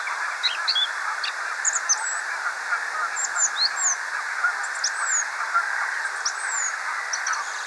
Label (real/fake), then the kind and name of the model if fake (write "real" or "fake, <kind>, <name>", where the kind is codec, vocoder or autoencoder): real